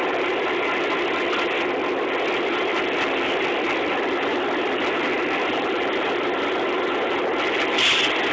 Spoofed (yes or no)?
no